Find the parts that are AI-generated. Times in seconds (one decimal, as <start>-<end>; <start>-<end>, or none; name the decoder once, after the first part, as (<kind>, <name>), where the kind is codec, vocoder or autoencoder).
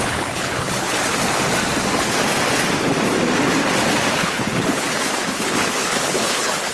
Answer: 0.0-1.0 (codec, HILCodec); 4.1-6.7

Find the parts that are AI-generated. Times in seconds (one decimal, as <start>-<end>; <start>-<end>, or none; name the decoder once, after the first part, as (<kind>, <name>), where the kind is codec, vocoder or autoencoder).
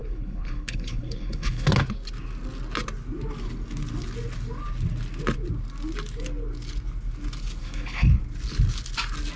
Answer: 0.0-1.7 (codec, HILCodec); 7.6-8.2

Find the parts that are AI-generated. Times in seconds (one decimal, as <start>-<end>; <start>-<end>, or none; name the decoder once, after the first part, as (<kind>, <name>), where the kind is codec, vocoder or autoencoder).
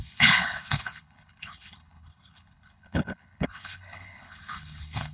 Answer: 0.0-5.1 (codec, HILCodec)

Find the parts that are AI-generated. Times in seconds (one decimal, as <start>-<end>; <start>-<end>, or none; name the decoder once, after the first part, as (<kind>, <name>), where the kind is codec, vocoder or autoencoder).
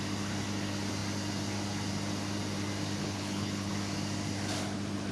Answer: 3.0-3.7 (codec, HILCodec)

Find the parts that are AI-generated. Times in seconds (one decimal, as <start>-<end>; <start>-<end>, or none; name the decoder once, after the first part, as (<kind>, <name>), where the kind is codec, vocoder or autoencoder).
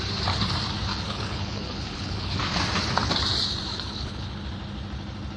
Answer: 0.9-2.4 (codec, HILCodec); 3.7-4.3